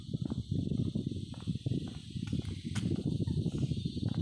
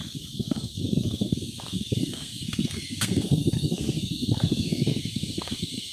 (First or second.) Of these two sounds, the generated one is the second